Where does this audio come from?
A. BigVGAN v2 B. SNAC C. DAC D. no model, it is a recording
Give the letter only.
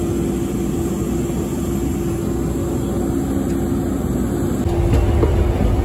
D